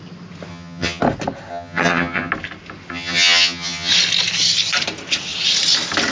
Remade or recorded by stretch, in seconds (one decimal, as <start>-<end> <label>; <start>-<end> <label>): 0.0-0.5 recorded; 0.5-1.0 remade; 1.0-1.5 recorded; 1.5-2.3 remade; 2.3-2.9 recorded; 2.9-3.9 remade; 3.9-6.1 recorded